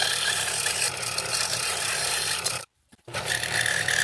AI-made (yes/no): yes